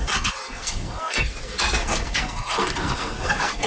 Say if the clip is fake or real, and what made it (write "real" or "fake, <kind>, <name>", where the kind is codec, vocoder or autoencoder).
fake, codec, SNAC